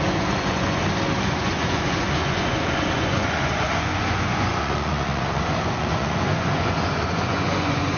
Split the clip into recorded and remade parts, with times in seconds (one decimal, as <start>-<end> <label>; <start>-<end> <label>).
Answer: 0.0-0.8 remade; 0.8-1.3 recorded; 1.3-8.0 remade